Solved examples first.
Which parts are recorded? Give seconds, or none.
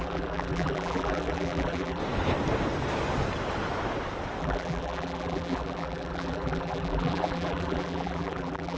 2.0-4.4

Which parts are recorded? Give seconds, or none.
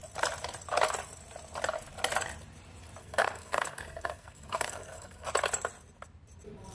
0.0-3.0; 5.3-6.7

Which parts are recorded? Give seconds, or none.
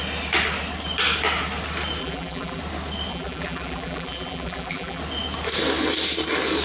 0.0-2.0; 2.6-3.1; 5.0-6.6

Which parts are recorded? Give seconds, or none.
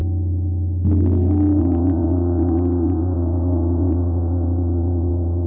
0.0-1.6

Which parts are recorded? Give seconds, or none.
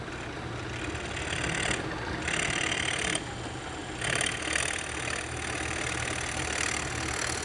0.0-7.4